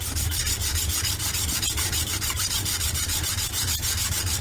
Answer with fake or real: fake